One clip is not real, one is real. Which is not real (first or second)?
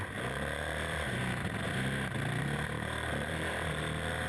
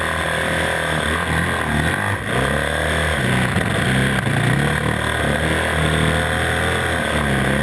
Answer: first